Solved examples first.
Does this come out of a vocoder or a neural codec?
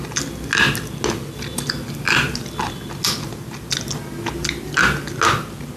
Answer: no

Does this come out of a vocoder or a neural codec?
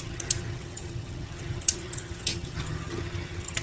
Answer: yes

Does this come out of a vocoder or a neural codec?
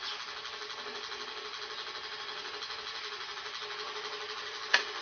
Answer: no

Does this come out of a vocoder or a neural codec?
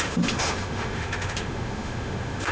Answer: yes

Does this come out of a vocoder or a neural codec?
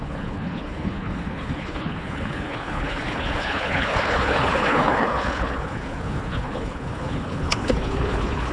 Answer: yes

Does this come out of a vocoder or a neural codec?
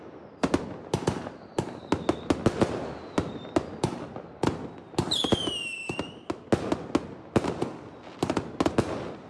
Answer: no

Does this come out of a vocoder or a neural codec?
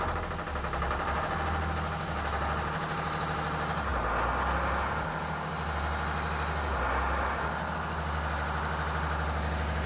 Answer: no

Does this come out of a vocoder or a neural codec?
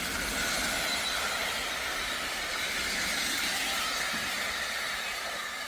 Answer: no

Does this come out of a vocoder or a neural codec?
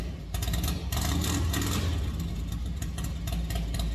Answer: no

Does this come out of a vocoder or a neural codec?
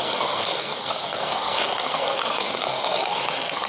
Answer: yes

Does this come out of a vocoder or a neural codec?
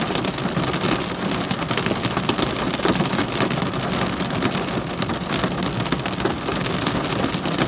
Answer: no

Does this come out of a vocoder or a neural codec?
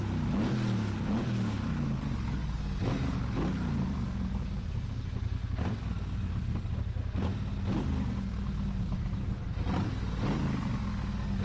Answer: no